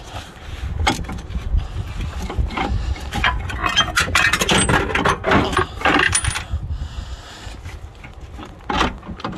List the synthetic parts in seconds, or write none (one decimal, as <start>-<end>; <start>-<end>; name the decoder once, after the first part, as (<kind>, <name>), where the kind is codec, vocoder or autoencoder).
none